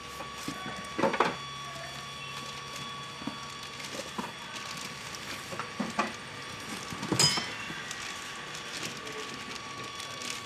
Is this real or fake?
real